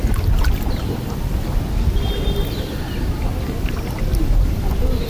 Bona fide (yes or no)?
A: yes